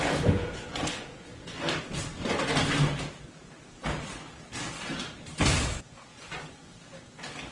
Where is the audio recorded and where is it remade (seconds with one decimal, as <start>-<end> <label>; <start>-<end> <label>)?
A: 0.0-0.7 recorded; 0.7-1.6 remade; 1.6-6.1 recorded; 6.1-6.8 remade; 6.8-7.5 recorded